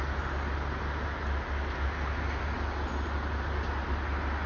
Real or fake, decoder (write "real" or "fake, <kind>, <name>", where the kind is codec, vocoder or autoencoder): real